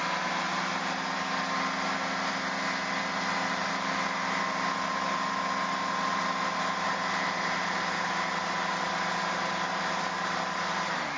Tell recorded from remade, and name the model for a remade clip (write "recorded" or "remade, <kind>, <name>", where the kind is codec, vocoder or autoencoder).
recorded